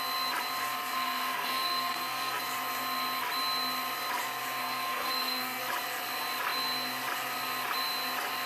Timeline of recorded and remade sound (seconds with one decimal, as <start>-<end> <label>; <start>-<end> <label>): 0.0-0.6 recorded; 0.6-2.4 remade; 2.4-4.6 recorded; 4.6-5.6 remade; 5.6-8.5 recorded